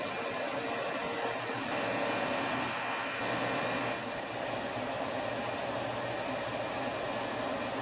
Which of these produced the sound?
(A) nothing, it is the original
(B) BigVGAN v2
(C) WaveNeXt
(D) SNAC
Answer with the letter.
A